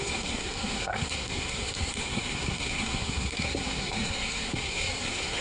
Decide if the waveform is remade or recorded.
remade